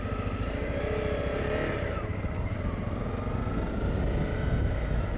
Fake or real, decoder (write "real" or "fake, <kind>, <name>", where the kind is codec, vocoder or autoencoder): real